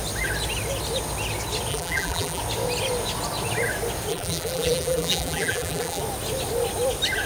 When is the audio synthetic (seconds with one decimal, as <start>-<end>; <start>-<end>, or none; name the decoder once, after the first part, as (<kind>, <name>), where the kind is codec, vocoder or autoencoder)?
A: 1.7-2.4 (vocoder, BigVGAN v2); 4.1-6.0